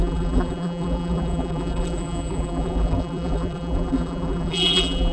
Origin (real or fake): fake